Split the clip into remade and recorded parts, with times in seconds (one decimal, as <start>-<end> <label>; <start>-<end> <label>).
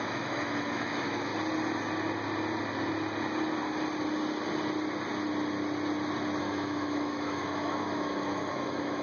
0.0-1.3 remade; 1.3-6.4 recorded; 6.4-9.0 remade